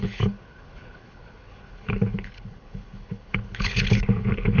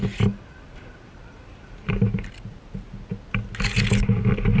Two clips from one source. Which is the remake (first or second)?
first